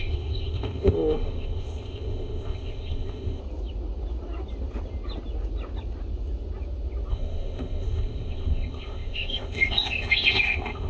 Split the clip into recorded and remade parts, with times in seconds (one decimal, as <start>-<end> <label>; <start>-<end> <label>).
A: 0.0-3.4 remade; 3.4-7.1 recorded; 7.1-10.9 remade